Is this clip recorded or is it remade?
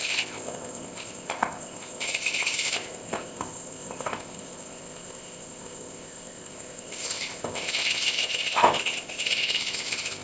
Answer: remade